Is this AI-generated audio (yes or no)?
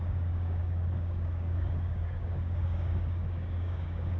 yes